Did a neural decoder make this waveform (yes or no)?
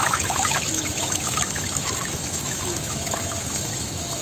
yes